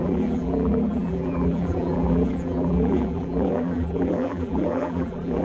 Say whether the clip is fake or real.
fake